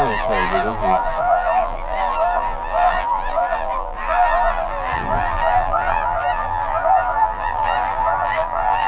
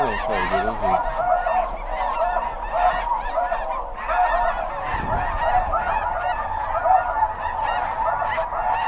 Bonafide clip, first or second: second